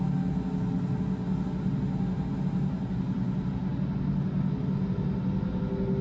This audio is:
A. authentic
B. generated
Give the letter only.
A